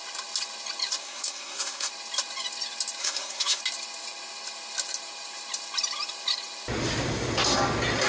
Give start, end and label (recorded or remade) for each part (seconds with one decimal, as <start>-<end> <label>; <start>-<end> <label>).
0.0-1.0 recorded; 1.0-1.9 remade; 1.9-3.0 recorded; 3.0-3.6 remade; 3.6-8.1 recorded